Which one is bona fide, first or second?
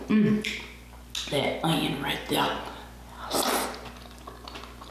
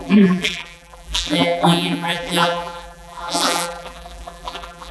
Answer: first